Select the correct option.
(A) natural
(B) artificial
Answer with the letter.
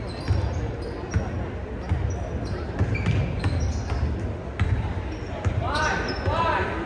A